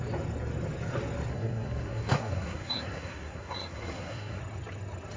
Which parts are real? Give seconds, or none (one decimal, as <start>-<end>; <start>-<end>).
0.0-1.3; 4.4-5.2